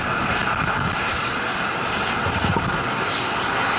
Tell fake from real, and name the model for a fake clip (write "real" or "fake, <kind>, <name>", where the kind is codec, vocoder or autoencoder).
real